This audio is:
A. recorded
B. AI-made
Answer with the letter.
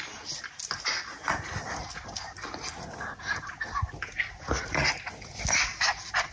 A